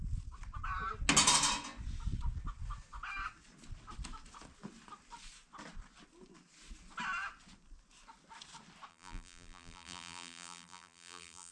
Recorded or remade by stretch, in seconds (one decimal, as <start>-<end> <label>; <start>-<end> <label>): 0.0-8.9 recorded; 8.9-11.5 remade